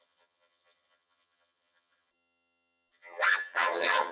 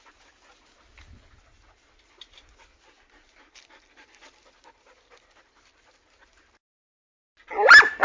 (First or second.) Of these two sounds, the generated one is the first